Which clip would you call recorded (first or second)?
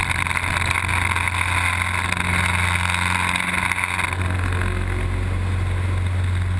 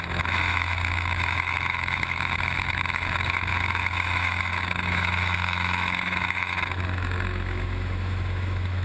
first